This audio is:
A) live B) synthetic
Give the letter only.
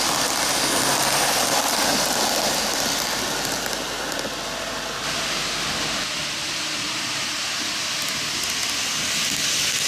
A